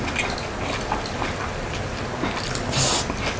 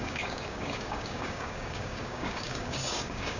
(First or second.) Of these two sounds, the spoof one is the second